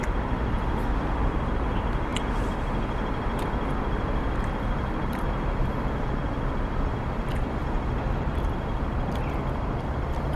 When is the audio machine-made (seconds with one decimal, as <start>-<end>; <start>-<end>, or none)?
none